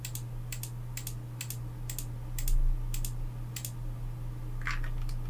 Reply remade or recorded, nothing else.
recorded